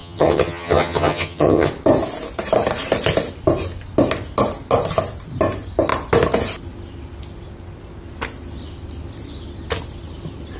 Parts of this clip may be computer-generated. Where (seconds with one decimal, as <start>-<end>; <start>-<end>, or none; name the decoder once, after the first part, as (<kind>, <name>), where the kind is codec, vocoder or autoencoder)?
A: 0.0-1.7 (vocoder, HiFi-GAN)